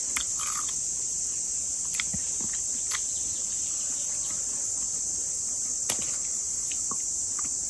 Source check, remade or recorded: recorded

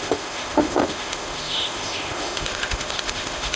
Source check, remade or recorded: remade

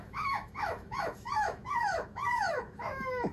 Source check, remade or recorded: remade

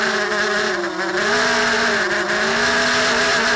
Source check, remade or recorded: recorded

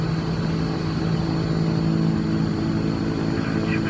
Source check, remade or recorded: recorded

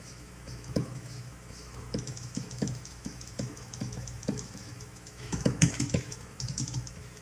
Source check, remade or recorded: remade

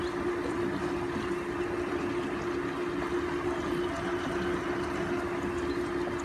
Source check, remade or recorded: recorded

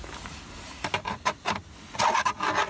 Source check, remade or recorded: recorded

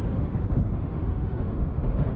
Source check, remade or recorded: remade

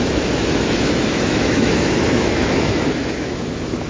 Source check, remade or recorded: remade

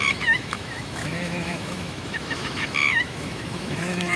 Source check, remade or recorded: remade